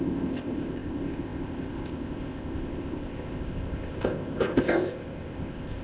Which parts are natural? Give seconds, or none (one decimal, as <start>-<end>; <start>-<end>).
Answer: none